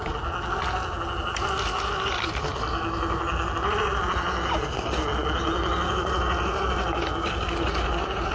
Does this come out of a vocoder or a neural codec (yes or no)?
no